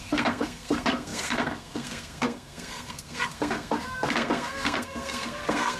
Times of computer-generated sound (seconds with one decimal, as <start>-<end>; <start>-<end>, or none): 0.0-5.8